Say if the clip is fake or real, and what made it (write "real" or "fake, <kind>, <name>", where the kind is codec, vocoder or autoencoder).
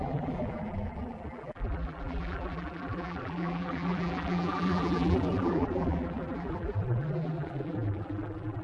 fake, vocoder, BigVGAN v2